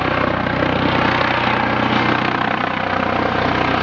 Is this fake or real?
real